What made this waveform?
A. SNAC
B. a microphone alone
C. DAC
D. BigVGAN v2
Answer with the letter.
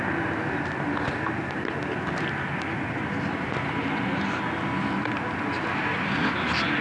B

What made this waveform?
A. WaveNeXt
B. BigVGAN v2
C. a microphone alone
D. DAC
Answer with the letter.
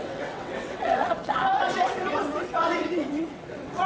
A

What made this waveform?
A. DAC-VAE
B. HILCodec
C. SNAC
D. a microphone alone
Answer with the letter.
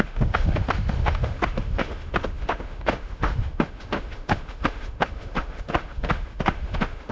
A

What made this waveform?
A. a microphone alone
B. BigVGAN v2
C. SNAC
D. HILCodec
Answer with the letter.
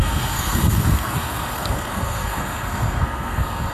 C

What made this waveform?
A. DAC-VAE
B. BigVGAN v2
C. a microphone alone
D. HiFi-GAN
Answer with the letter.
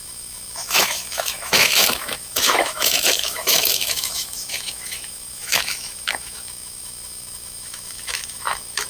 A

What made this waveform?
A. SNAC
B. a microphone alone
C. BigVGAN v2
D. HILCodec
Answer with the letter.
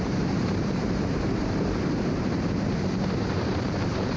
C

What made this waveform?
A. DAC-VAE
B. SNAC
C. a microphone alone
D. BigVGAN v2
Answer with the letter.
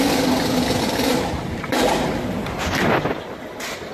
C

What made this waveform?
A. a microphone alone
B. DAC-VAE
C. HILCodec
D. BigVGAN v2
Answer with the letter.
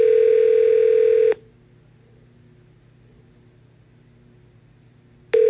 A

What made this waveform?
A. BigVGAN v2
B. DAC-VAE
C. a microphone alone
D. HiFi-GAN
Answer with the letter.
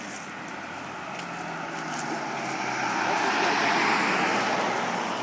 C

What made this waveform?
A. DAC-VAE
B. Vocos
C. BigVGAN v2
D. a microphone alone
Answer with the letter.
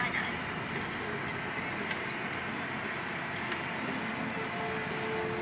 D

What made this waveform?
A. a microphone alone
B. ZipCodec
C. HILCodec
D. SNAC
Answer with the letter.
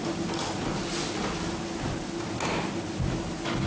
A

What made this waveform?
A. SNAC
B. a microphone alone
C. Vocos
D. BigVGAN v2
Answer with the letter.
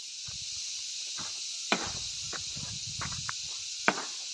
B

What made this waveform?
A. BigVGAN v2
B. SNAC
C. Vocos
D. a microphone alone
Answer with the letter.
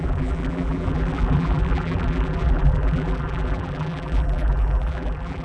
A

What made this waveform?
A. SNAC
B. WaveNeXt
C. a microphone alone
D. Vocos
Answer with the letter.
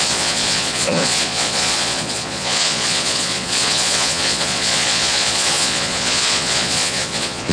D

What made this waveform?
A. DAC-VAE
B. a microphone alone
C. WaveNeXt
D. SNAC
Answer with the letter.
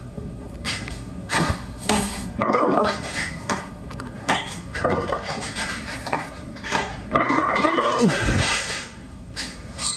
D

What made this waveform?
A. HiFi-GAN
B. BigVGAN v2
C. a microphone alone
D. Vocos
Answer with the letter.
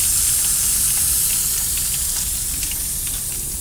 C